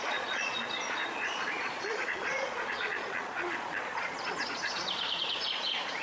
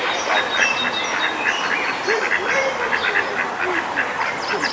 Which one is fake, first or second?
first